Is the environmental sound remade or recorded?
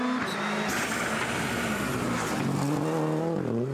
recorded